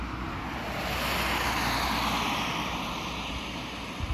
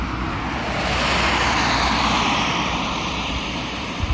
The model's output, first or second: second